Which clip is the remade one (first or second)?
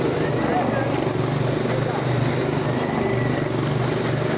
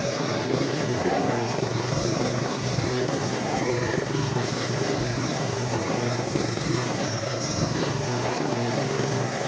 second